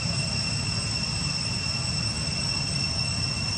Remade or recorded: recorded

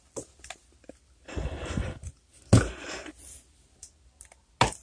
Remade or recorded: recorded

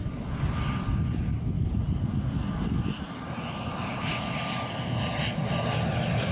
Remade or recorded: recorded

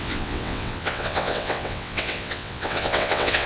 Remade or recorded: remade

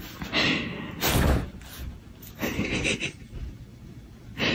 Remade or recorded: recorded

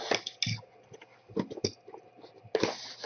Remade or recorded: recorded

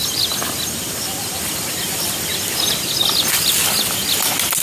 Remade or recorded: recorded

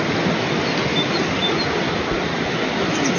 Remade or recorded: recorded